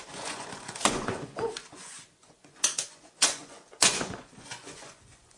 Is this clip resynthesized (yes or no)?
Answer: yes